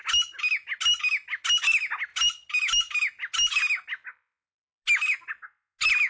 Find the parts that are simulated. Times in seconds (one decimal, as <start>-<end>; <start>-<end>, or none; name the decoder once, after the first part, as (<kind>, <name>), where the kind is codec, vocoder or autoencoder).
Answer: none